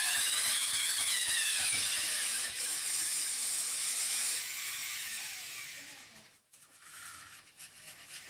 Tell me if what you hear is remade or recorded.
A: remade